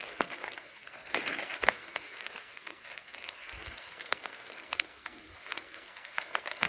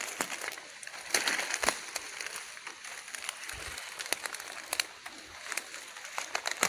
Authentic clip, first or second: second